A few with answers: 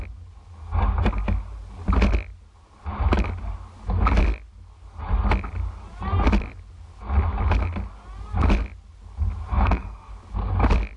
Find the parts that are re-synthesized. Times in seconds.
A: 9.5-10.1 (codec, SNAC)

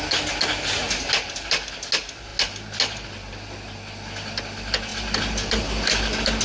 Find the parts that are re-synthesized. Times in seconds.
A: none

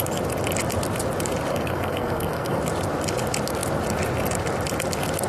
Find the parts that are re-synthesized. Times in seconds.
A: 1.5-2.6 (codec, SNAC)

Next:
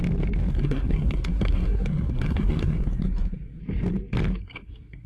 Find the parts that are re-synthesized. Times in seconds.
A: 0.5-3.6 (codec, SNAC); 4.4-5.1

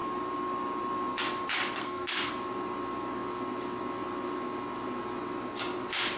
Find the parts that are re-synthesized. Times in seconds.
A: 1.8-2.3 (codec, SNAC)

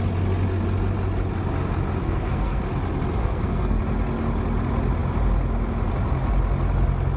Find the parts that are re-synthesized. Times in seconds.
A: 2.0-2.6 (codec, SNAC); 3.2-3.8